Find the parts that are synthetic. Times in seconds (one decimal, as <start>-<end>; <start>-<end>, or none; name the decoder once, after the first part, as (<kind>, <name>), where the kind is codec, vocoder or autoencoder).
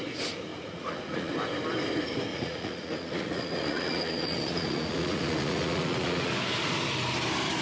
0.5-1.3 (vocoder, Vocos); 2.3-6.3